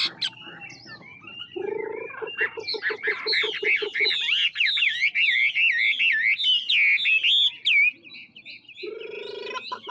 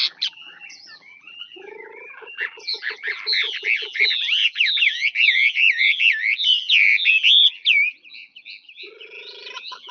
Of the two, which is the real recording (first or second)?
first